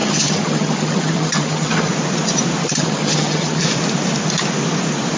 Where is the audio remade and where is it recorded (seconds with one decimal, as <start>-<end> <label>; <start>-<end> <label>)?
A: 0.0-1.9 remade; 1.9-2.6 recorded; 2.6-3.6 remade; 3.6-5.2 recorded

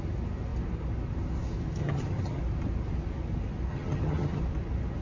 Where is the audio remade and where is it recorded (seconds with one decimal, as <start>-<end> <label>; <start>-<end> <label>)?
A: 0.0-1.8 recorded; 1.8-2.4 remade; 2.4-3.7 recorded; 3.7-4.4 remade; 4.4-5.0 recorded

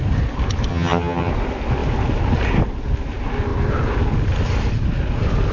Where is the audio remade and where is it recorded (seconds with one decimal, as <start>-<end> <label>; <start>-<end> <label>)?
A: 0.0-0.7 recorded; 0.7-1.3 remade; 1.3-5.5 recorded

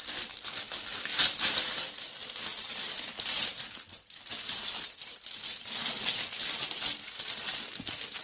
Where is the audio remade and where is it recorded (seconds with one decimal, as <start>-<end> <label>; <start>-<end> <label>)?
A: 0.0-8.2 recorded

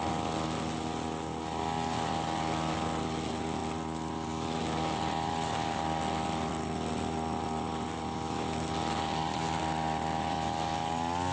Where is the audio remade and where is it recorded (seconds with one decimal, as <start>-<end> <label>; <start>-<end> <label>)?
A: 0.0-11.3 recorded

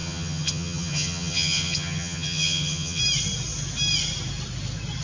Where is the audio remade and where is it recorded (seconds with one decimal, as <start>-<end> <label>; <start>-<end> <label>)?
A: 0.0-3.0 remade; 3.0-5.0 recorded